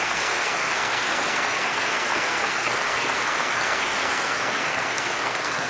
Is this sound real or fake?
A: fake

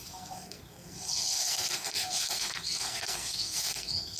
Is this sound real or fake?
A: fake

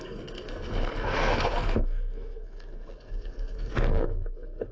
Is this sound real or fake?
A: fake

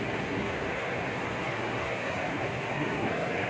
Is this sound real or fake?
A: fake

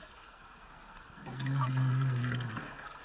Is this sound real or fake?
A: fake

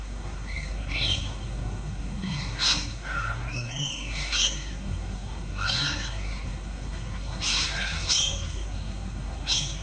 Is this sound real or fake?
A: fake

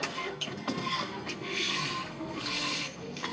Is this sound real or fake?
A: fake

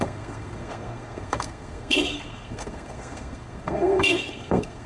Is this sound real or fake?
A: fake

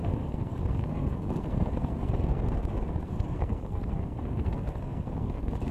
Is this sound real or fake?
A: fake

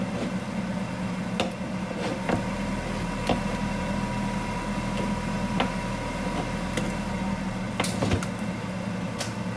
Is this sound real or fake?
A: real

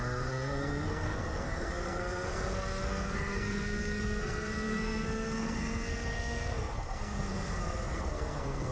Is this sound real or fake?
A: fake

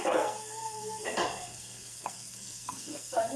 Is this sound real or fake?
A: fake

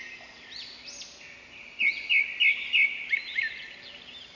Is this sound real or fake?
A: real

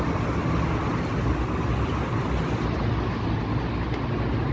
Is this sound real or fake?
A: real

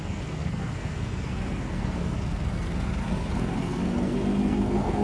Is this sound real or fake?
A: fake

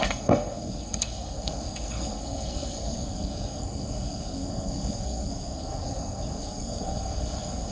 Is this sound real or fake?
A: fake